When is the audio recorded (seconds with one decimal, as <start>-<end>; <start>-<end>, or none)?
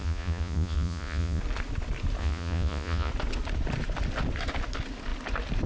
1.4-2.2; 3.1-5.7